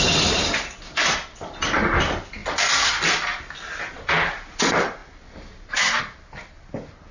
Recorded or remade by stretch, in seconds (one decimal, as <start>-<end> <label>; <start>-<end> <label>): 0.0-7.1 recorded